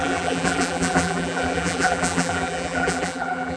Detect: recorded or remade remade